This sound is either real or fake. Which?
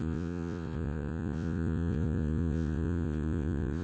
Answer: fake